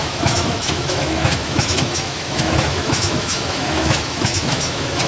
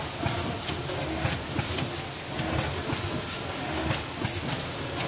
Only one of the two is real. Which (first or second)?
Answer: second